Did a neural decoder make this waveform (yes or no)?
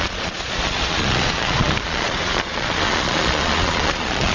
yes